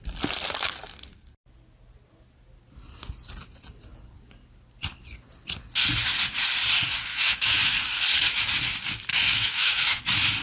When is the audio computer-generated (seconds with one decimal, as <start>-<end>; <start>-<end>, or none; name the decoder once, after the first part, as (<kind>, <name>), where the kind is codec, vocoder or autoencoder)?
7.1-7.8 (autoencoder, DAC-VAE); 9.1-10.0